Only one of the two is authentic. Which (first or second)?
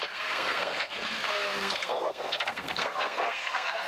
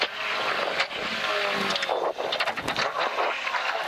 second